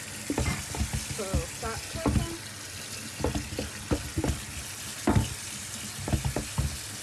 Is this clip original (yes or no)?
yes